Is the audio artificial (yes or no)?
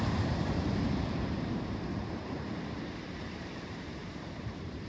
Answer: yes